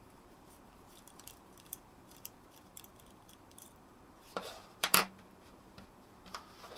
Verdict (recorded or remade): remade